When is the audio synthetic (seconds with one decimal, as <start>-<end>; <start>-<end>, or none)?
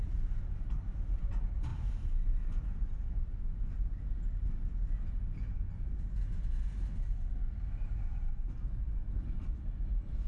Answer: none